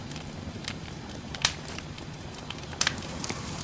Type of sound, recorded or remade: remade